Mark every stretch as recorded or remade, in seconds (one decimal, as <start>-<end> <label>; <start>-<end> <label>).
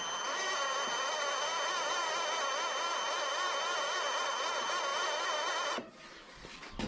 0.0-6.9 recorded